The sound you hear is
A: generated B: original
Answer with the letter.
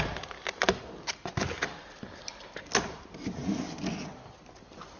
B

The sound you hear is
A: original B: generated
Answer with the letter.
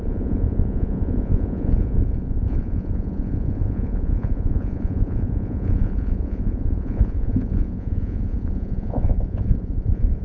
B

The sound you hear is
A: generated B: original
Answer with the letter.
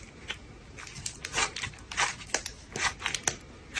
B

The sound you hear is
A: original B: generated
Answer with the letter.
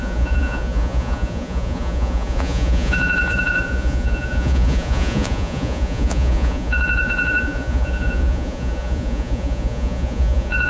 B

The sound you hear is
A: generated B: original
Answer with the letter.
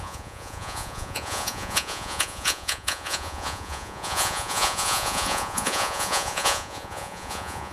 A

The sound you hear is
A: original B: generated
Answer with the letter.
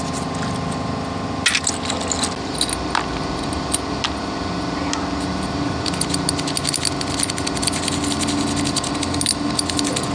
A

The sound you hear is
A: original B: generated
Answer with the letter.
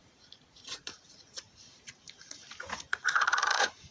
B